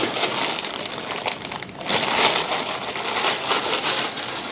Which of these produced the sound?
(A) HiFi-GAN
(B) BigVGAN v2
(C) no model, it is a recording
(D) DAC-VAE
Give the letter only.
C